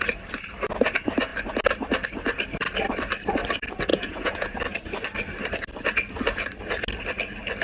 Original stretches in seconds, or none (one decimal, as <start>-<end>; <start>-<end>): 0.0-3.9; 4.6-7.6